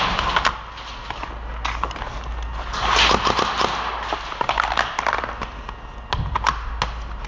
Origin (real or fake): real